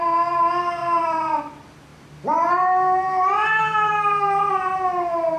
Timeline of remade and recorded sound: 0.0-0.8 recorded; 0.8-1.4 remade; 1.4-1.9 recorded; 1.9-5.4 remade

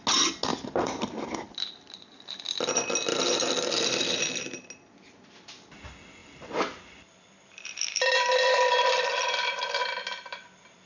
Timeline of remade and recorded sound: 0.0-0.5 recorded; 0.5-2.4 remade; 2.4-3.1 recorded; 3.1-4.0 remade; 4.0-6.2 recorded; 6.2-10.9 remade

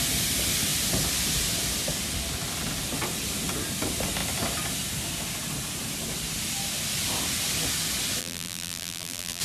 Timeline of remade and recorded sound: 0.0-8.2 recorded; 8.2-9.4 remade

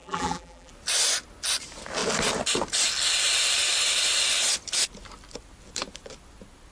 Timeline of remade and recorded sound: 0.0-0.7 remade; 0.7-6.7 recorded

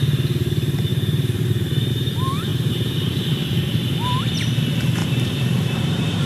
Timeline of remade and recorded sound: 0.0-0.9 recorded; 0.9-1.9 remade; 1.9-2.5 recorded; 2.5-3.1 remade; 3.1-5.0 recorded; 5.0-6.3 remade

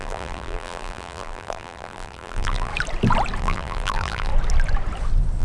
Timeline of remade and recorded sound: 0.0-2.7 remade; 2.7-3.4 recorded; 3.4-4.3 remade; 4.3-5.4 recorded

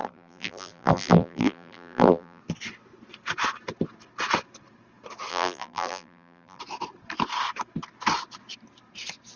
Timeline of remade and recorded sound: 0.0-2.4 remade; 2.4-5.3 recorded; 5.3-6.6 remade; 6.6-9.4 recorded